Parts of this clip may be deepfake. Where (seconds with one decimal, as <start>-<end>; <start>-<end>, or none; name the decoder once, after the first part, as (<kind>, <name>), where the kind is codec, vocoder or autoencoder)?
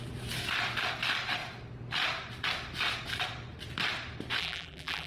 4.4-5.1 (vocoder, BigVGAN v2)